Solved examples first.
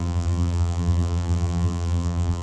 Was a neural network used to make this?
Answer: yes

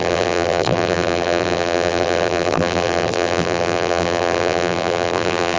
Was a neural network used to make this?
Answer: yes